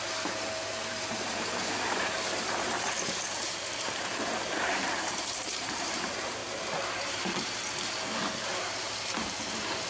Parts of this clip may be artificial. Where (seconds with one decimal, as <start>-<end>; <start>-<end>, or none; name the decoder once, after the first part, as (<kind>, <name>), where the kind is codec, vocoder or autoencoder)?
0.0-6.4 (vocoder, BigVGAN v2); 7.1-7.6; 8.6-9.9